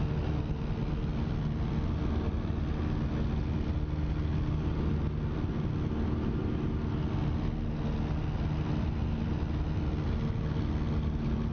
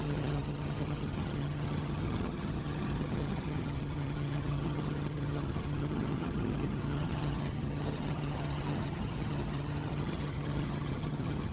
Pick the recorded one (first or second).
first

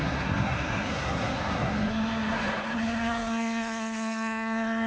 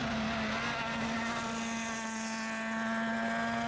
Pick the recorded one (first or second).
second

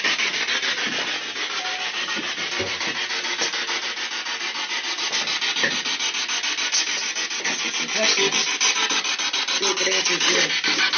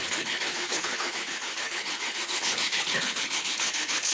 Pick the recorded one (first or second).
first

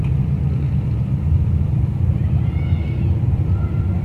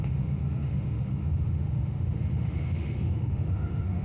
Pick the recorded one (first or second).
first